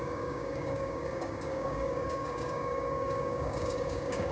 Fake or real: fake